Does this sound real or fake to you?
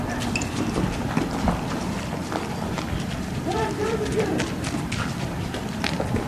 fake